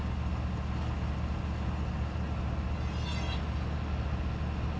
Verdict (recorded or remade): recorded